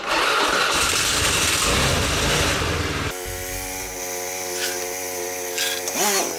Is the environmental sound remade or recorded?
recorded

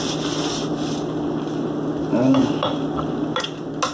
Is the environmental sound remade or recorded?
recorded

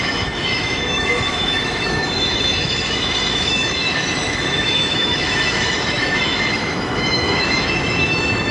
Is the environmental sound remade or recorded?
remade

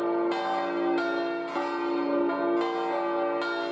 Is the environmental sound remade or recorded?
recorded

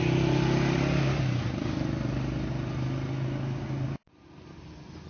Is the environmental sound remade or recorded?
recorded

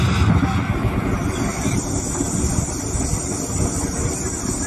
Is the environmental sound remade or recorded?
recorded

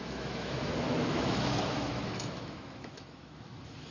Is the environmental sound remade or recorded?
remade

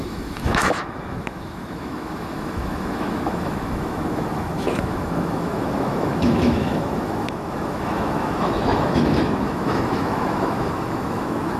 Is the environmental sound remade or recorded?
remade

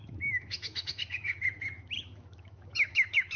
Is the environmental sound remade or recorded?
remade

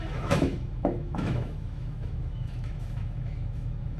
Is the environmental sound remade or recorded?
remade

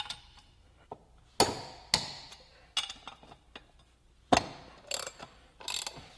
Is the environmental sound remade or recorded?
recorded